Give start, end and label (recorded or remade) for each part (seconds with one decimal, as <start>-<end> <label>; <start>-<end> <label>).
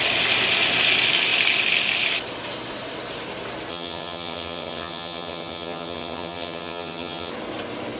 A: 0.0-3.7 recorded; 3.7-7.3 remade; 7.3-8.0 recorded